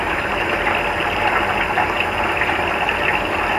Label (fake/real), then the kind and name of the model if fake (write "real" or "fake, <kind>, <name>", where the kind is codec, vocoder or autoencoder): real